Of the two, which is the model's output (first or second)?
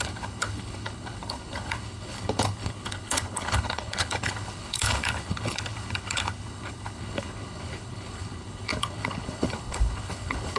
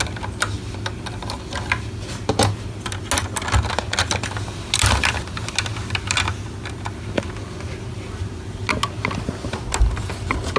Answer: first